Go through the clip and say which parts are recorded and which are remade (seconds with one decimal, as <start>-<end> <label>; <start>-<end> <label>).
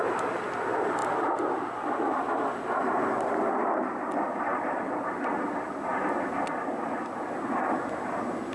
0.0-4.5 recorded; 4.5-5.3 remade; 5.3-8.5 recorded